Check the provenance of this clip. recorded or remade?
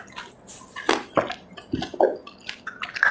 recorded